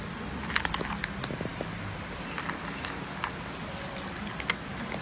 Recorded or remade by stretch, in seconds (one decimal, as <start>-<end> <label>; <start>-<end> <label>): 0.0-5.0 recorded